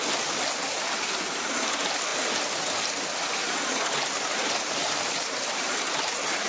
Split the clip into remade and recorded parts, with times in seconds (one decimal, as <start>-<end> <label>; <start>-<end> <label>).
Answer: 0.0-4.8 recorded; 4.8-5.8 remade; 5.8-6.5 recorded